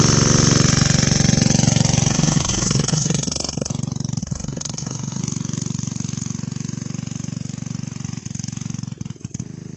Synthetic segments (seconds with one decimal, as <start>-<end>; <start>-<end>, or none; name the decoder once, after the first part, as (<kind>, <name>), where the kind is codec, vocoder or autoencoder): 2.1-3.7 (codec, SNAC); 4.2-5.2